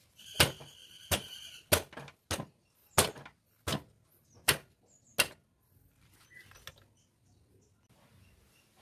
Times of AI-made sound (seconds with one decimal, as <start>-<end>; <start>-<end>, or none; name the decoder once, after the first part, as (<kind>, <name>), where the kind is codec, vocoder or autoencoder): none